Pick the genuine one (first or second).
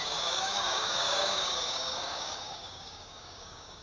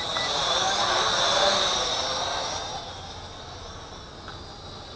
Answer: second